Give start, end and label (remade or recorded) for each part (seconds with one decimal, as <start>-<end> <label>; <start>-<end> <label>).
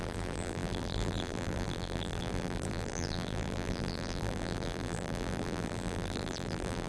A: 0.0-6.9 remade